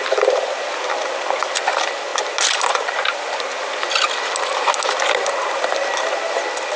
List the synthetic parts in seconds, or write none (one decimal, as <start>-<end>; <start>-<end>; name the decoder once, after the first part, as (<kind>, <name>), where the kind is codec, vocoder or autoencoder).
none